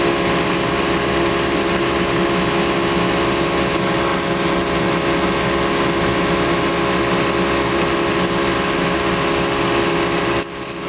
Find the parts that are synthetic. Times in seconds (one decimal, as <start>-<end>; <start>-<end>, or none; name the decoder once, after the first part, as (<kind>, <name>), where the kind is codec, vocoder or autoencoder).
none